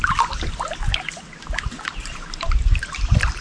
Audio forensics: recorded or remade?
recorded